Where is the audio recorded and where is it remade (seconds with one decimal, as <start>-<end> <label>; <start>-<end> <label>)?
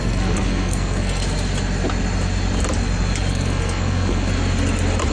0.0-1.2 remade; 1.2-3.3 recorded; 3.3-4.3 remade; 4.3-5.1 recorded